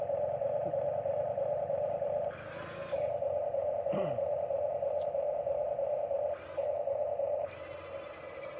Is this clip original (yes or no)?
no